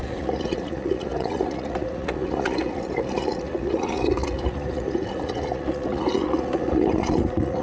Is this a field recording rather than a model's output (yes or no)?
no